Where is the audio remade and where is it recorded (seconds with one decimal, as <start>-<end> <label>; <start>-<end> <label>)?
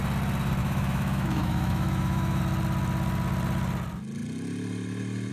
0.0-0.6 recorded; 0.6-2.4 remade; 2.4-5.3 recorded